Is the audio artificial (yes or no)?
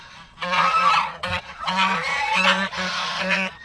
yes